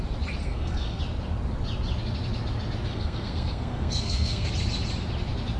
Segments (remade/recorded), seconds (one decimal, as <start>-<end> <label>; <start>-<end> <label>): 0.0-0.4 recorded; 0.4-1.0 remade; 1.0-2.9 recorded; 2.9-4.5 remade; 4.5-5.6 recorded